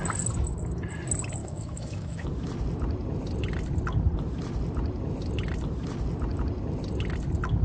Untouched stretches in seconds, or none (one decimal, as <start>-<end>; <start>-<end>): 0.0-1.4; 2.3-7.6